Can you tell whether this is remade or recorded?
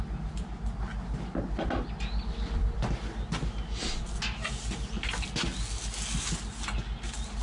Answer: recorded